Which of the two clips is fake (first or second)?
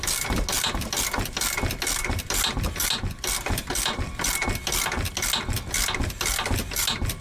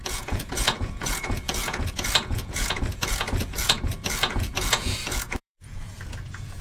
second